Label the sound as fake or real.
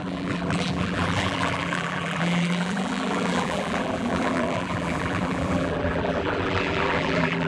fake